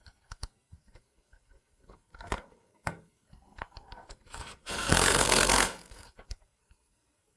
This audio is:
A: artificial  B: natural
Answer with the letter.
A